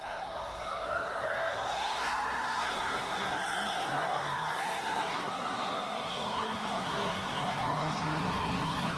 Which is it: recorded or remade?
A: remade